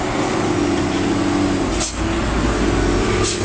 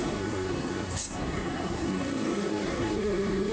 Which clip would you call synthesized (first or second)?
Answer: second